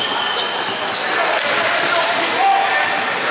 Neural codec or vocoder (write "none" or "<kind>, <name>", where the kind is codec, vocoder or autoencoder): none